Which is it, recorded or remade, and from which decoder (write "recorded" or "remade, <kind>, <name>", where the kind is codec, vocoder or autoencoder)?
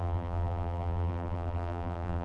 remade, vocoder, BigVGAN v2